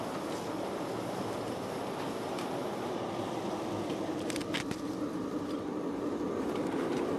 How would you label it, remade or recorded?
recorded